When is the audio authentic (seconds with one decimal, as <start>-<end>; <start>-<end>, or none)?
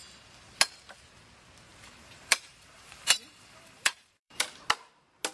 0.0-1.7; 4.4-5.3